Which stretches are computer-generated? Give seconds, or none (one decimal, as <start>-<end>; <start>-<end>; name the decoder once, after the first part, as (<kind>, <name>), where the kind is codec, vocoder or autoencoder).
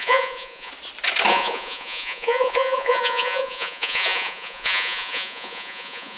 0.0-0.7 (vocoder, Vocos); 1.3-6.2